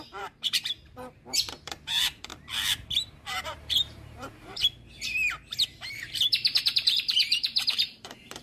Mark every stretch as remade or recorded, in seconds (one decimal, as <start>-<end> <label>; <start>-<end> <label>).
0.0-2.3 remade; 2.3-3.4 recorded; 3.4-4.6 remade; 4.6-5.7 recorded; 5.7-8.4 remade

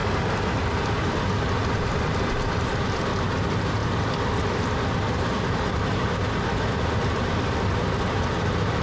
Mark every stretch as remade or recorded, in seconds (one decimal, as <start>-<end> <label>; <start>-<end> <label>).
0.0-8.8 recorded

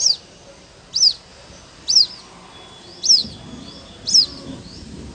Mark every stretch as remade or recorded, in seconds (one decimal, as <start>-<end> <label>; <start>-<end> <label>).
0.0-5.1 recorded

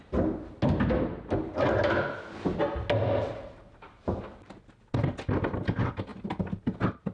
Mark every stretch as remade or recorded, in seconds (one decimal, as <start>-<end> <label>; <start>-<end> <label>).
0.0-3.3 recorded; 3.3-4.2 remade; 4.2-7.1 recorded

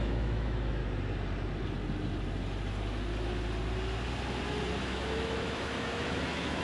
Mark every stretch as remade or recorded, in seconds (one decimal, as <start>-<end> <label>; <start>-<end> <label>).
0.0-0.8 remade; 0.8-4.8 recorded; 4.8-6.6 remade

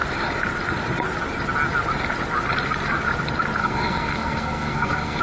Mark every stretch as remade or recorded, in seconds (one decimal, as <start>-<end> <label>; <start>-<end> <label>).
0.0-3.6 recorded; 3.6-5.2 remade

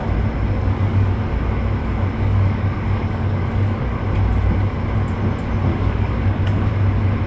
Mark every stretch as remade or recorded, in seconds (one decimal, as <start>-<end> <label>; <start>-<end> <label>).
0.0-0.6 recorded; 0.6-1.2 remade; 1.2-1.8 recorded; 1.8-4.0 remade; 4.0-5.7 recorded; 5.7-6.7 remade; 6.7-7.3 recorded